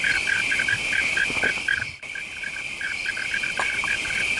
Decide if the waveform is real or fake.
real